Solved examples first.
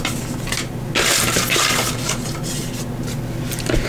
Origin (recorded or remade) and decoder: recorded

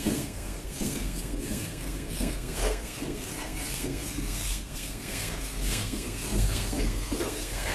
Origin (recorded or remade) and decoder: remade, codec, SNAC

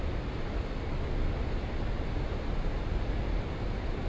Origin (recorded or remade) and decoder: recorded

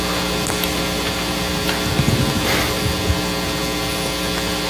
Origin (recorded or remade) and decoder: recorded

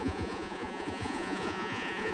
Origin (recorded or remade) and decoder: remade, vocoder, Vocos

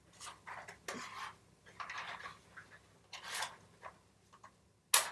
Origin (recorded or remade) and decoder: recorded